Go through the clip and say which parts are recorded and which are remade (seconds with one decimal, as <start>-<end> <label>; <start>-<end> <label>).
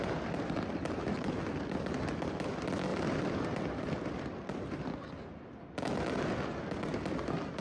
0.0-7.6 recorded